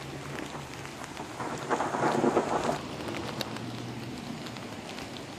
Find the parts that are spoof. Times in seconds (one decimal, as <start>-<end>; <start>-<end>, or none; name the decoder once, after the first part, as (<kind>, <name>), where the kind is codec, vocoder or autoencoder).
none